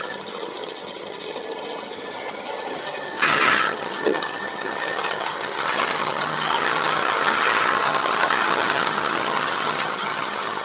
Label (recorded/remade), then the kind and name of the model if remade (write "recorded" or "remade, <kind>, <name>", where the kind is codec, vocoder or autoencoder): remade, vocoder, HiFi-GAN